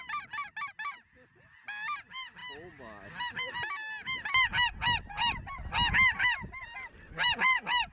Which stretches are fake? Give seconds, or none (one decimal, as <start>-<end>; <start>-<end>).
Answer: none